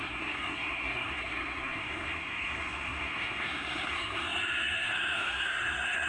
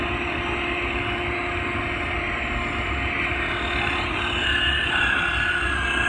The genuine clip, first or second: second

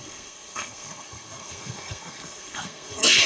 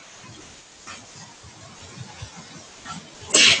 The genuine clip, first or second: second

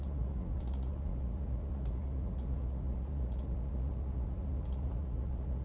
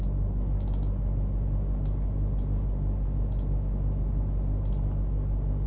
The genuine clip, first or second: second